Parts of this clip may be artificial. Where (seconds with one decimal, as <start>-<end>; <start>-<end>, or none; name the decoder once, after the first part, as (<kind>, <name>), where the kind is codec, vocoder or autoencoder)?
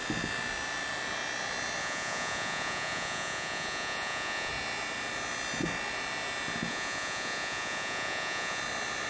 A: 1.8-4.5 (vocoder, Vocos); 6.7-8.6